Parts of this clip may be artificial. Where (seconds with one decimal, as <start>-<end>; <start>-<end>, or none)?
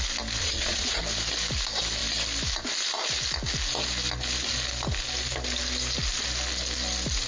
0.4-1.0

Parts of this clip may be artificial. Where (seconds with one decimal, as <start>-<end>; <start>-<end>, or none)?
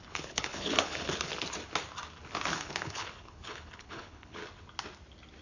0.0-1.3; 2.5-4.4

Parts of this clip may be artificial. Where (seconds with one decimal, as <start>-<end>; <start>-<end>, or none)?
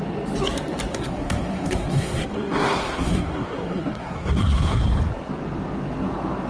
0.9-4.8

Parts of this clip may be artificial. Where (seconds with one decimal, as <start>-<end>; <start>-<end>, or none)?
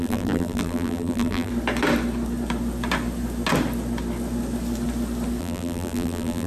0.0-1.5; 5.4-6.5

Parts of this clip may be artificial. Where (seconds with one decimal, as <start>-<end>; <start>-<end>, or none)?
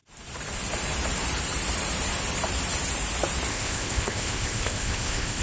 3.5-5.4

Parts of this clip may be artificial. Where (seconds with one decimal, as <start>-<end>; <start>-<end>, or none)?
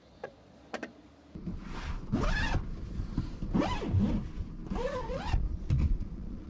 0.0-1.1; 5.0-6.5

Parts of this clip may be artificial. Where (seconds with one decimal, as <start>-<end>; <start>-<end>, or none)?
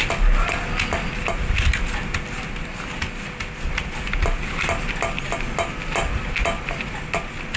none